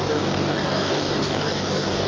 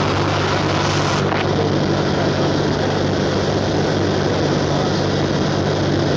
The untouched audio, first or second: second